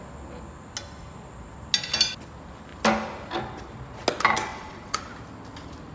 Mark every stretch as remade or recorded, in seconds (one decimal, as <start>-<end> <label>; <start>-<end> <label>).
0.0-4.5 recorded; 4.5-5.1 remade; 5.1-5.9 recorded